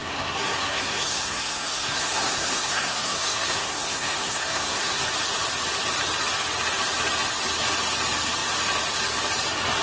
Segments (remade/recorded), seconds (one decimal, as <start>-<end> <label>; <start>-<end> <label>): 0.0-5.0 remade; 5.0-9.8 recorded

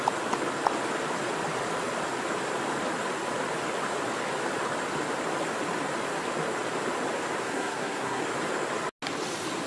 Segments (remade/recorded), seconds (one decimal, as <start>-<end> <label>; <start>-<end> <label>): 0.0-7.4 recorded; 7.4-8.3 remade; 8.3-9.7 recorded